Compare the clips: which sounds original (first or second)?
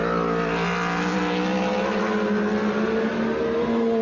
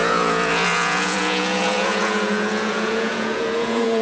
first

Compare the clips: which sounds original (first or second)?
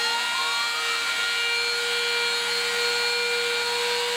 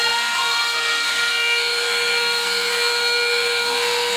first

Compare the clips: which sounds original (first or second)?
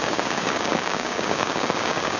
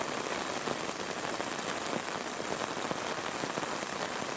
second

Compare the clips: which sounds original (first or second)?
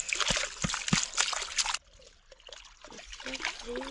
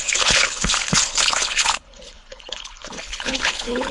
first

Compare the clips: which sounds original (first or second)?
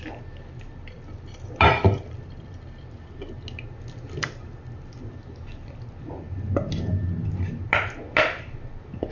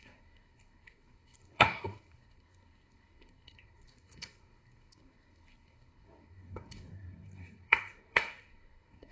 first